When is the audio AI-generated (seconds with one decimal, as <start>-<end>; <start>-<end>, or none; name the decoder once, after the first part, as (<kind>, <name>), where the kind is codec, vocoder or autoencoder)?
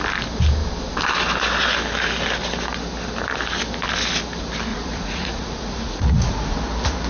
4.7-6.6 (vocoder, Vocos)